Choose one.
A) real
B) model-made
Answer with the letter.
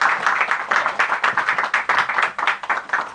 A